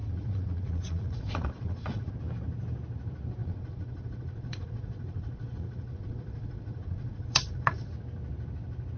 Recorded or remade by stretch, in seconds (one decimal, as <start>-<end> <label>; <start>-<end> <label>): 0.0-2.1 remade; 2.1-3.4 recorded; 3.4-7.9 remade; 7.9-9.0 recorded